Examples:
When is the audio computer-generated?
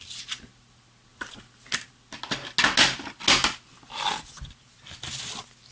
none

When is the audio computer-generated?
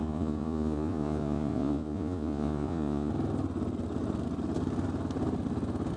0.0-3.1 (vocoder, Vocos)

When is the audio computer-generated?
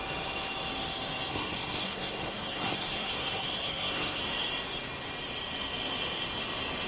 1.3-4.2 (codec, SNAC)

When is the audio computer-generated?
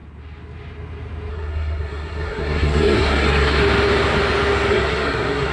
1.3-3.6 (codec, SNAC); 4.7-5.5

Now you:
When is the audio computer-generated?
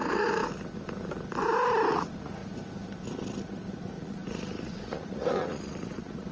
0.0-0.4 (vocoder, Vocos); 1.9-2.4; 3.8-6.3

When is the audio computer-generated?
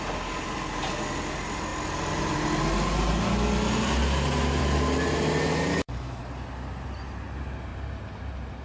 5.7-6.2 (codec, DAC)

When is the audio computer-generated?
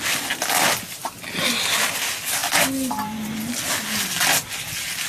none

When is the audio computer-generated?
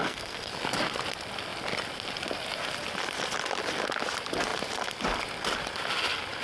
0.0-0.5 (codec, SNAC)